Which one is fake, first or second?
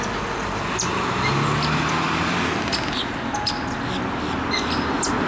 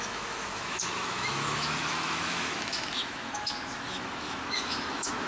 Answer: second